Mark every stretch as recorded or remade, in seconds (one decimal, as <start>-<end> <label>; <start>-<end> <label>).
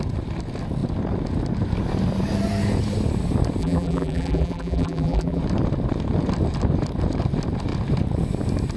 0.0-3.6 recorded; 3.6-5.4 remade; 5.4-8.8 recorded